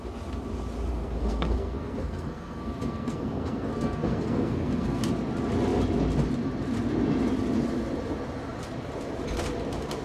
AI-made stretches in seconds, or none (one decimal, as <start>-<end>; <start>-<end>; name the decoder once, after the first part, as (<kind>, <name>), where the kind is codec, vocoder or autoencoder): 0.9-5.0 (codec, SNAC)